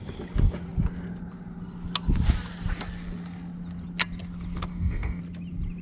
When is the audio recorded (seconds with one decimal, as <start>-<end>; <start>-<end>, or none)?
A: 0.0-4.7; 5.2-5.8